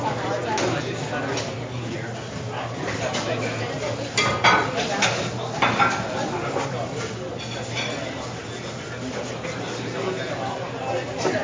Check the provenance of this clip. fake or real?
real